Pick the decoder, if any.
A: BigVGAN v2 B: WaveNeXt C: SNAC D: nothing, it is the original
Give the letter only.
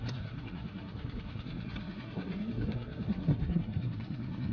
C